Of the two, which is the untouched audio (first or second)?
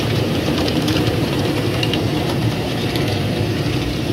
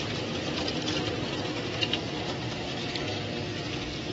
second